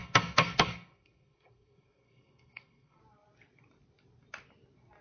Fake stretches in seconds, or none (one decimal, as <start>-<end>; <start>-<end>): 0.0-3.0